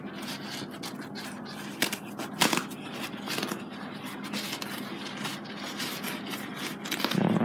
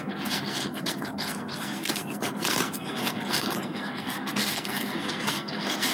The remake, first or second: second